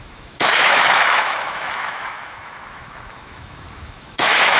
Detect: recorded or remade remade